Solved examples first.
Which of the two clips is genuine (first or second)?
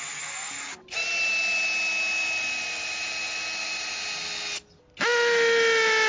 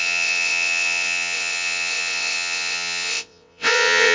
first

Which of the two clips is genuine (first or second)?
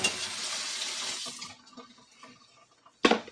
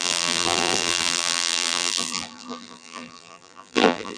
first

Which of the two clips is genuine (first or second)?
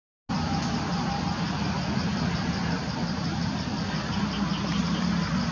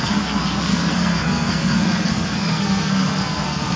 first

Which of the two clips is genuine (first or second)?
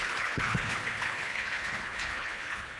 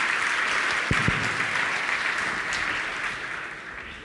second